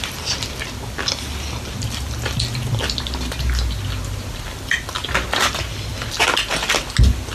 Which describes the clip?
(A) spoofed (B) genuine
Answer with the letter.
B